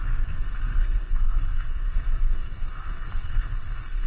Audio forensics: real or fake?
fake